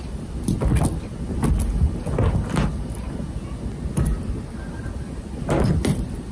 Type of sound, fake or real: real